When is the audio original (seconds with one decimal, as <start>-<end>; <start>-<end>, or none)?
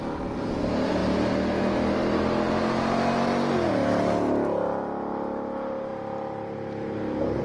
0.0-7.4